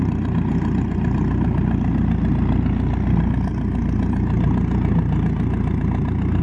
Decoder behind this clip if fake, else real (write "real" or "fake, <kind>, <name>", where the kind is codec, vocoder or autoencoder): real